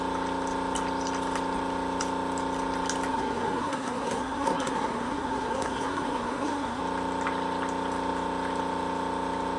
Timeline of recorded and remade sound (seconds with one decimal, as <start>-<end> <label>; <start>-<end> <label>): 0.0-3.1 recorded; 3.1-6.8 remade; 6.8-9.6 recorded

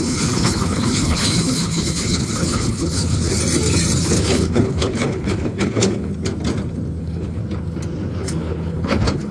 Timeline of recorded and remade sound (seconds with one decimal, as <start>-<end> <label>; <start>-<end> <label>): 0.0-3.4 remade; 3.4-4.0 recorded; 4.0-6.1 remade; 6.1-7.0 recorded; 7.0-7.4 remade; 7.4-8.1 recorded; 8.1-9.3 remade